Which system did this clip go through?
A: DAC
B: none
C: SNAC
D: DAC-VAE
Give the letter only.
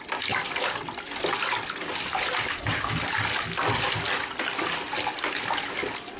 B